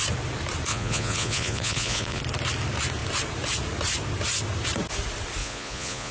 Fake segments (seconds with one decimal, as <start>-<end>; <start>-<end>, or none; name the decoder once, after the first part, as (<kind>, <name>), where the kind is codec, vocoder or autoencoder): 0.7-2.2 (vocoder, Vocos); 5.4-6.1